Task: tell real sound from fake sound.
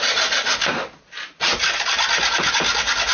real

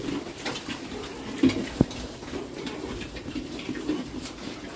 real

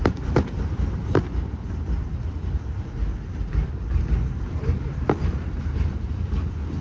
fake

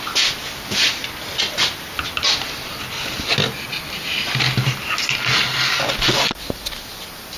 real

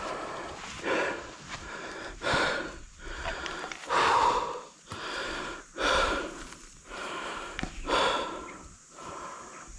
fake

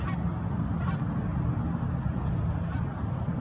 real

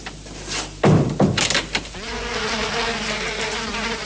real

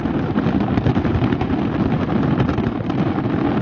fake